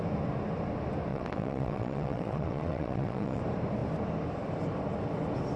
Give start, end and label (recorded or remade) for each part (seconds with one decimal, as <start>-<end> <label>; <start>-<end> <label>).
0.0-1.1 recorded; 1.1-3.4 remade; 3.4-5.6 recorded